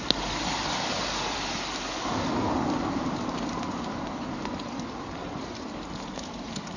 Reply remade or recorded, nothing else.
recorded